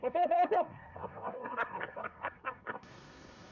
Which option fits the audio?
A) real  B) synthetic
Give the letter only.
B